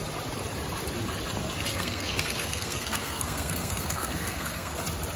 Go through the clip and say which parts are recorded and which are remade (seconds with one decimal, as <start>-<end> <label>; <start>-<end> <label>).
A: 0.0-1.7 recorded; 1.7-4.8 remade; 4.8-5.2 recorded